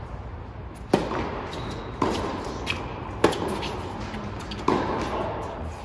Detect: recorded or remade recorded